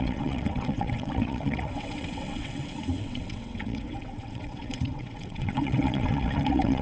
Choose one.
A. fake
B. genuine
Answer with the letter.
A